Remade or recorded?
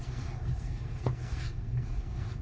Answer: remade